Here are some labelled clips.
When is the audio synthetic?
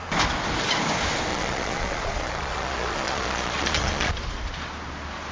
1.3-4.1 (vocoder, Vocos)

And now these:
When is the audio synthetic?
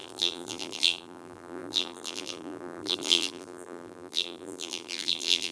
0.0-5.5 (vocoder, BigVGAN v2)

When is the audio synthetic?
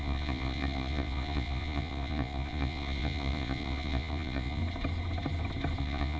0.0-4.6 (vocoder, Vocos); 5.8-6.2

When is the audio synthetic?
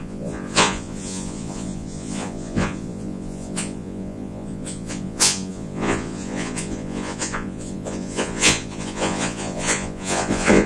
0.0-10.7 (vocoder, Vocos)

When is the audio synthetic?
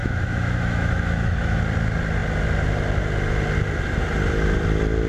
0.0-1.6 (autoencoder, DAC-VAE)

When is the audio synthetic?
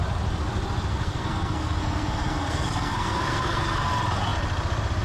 0.9-3.9 (codec, SNAC)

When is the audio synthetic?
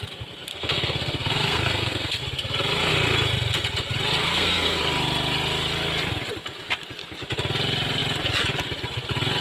0.5-2.2 (codec, SNAC); 4.2-4.8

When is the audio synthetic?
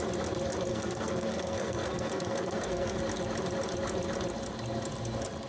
0.7-3.0 (codec, SNAC)